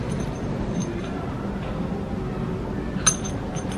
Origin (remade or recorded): recorded